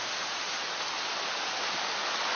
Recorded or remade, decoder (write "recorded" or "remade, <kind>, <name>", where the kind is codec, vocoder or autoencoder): recorded